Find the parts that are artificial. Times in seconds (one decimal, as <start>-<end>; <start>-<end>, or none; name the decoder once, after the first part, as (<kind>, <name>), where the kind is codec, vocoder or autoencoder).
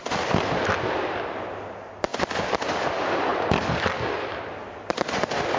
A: none